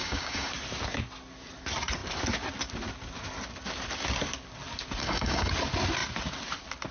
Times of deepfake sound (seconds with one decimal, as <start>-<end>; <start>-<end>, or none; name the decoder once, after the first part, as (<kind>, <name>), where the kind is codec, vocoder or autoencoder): 0.0-0.5 (codec, DAC); 5.0-5.5